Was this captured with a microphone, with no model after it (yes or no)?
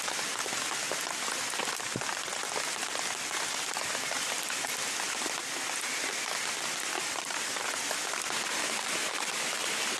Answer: yes